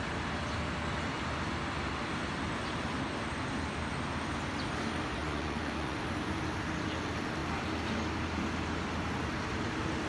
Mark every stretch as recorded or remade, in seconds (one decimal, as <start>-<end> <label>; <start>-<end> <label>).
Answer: 0.0-5.2 recorded; 5.2-6.0 remade; 6.0-10.1 recorded